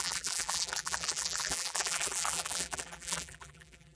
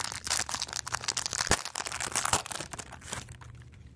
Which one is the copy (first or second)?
first